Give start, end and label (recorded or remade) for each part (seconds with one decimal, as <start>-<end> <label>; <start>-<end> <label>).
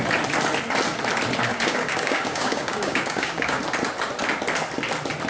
0.0-1.5 recorded; 1.5-3.6 remade; 3.6-5.3 recorded